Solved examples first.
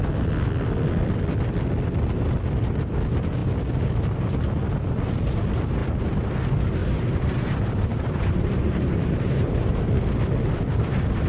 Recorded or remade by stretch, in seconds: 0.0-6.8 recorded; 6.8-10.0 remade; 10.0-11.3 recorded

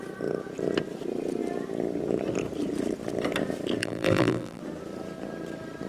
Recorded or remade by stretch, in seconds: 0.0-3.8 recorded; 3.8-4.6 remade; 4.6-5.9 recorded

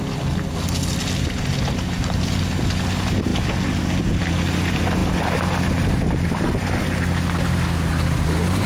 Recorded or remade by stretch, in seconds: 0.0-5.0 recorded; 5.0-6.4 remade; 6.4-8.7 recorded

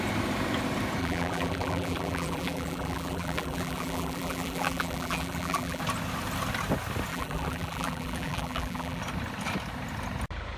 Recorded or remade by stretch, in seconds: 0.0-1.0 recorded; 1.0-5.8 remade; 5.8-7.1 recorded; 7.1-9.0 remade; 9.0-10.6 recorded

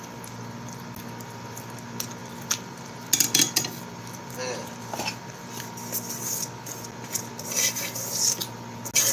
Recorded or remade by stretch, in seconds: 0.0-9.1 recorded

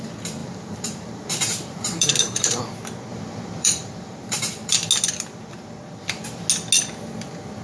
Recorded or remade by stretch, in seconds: 0.0-0.4 recorded; 0.4-2.6 remade; 2.6-3.1 recorded; 3.1-4.9 remade; 4.9-7.6 recorded